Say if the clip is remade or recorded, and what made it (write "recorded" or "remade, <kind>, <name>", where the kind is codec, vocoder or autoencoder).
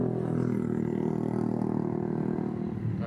recorded